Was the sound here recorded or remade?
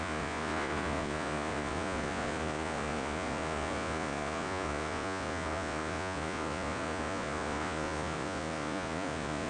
remade